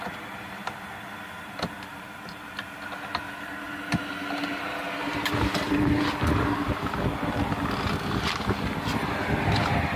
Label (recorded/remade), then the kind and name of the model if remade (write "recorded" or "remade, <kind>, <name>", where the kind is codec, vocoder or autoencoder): recorded